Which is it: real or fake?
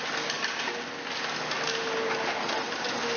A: real